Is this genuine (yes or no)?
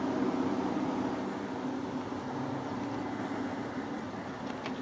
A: yes